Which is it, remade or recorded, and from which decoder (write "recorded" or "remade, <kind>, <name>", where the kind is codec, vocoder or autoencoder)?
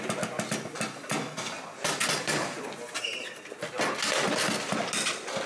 recorded